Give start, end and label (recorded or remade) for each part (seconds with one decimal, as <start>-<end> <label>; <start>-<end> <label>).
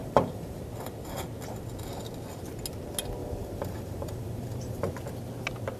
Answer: 0.0-0.6 remade; 0.6-3.2 recorded; 3.2-4.8 remade; 4.8-5.8 recorded